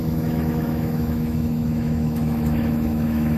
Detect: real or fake fake